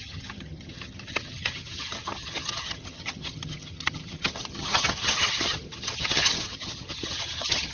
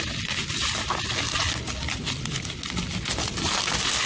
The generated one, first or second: first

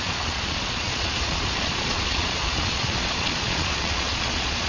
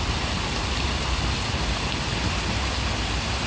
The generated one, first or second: first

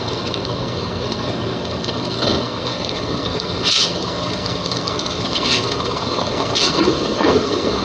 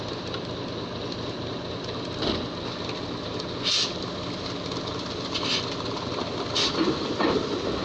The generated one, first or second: first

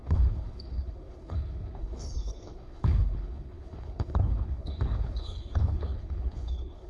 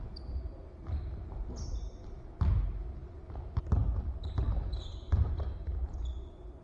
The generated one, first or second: first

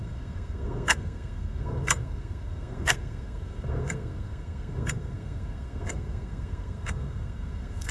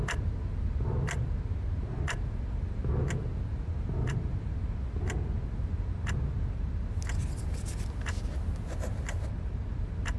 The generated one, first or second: first